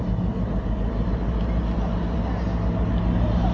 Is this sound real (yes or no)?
yes